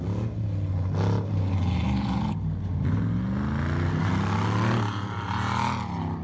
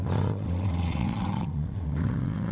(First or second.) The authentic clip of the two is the first